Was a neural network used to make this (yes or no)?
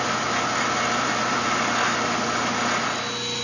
no